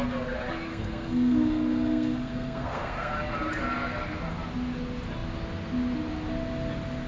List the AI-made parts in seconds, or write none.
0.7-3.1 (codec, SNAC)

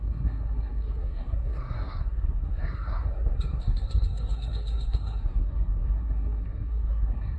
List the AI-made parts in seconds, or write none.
0.0-7.4 (codec, SNAC)

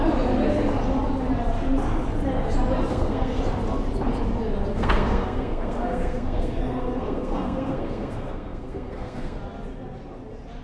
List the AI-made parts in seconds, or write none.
2.9-3.4 (codec, SNAC); 4.7-9.4